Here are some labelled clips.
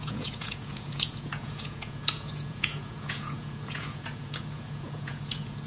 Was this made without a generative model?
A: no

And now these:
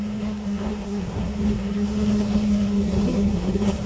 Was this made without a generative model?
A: no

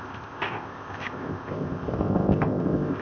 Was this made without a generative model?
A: no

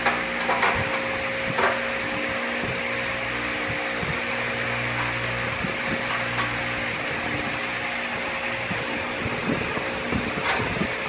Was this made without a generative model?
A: yes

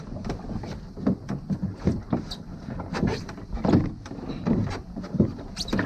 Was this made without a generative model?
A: yes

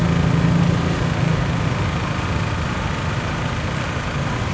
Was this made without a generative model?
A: yes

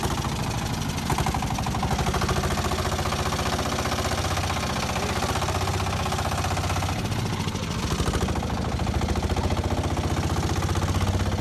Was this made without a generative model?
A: yes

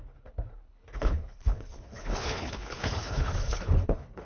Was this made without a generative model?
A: no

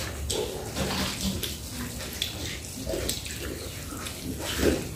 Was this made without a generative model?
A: yes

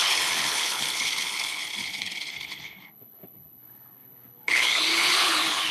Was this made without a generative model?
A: no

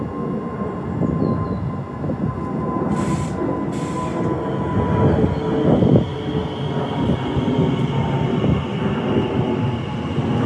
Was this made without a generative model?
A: yes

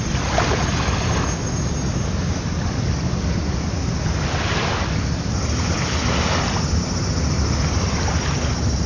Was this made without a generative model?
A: yes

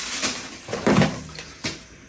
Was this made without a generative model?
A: no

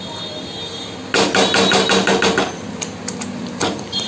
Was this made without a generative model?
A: yes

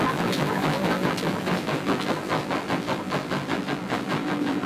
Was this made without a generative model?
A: no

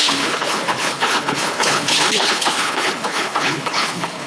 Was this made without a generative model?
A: no